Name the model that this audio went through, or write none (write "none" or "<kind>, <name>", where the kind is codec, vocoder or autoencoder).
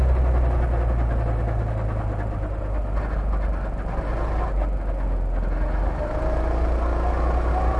none